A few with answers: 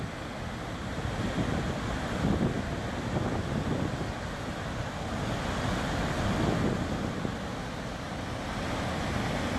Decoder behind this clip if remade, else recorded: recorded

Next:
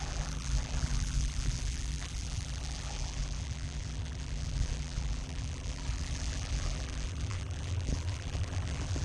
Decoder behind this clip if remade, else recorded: remade, vocoder, BigVGAN v2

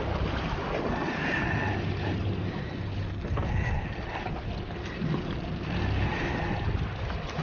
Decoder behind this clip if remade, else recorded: recorded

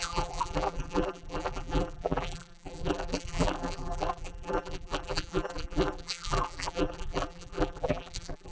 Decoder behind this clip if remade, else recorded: remade, vocoder, BigVGAN v2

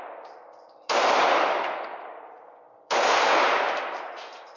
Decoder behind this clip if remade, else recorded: remade, vocoder, BigVGAN v2